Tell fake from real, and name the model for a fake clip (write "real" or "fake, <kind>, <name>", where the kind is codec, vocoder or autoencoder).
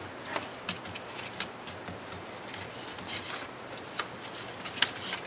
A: real